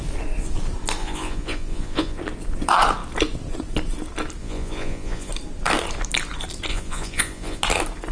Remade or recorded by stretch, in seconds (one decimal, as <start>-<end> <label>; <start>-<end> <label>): 0.0-1.0 recorded; 1.0-2.2 remade; 2.2-4.4 recorded; 4.4-5.3 remade; 5.3-6.7 recorded; 6.7-7.6 remade; 7.6-8.1 recorded